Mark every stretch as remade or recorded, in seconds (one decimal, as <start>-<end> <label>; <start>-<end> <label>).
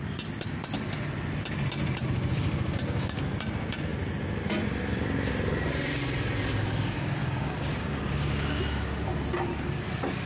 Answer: 0.0-7.2 recorded; 7.2-8.6 remade; 8.6-10.3 recorded